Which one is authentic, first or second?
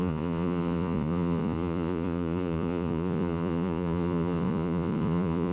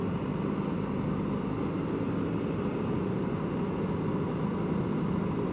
second